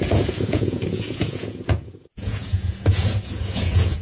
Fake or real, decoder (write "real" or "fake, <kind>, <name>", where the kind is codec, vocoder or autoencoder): fake, vocoder, Vocos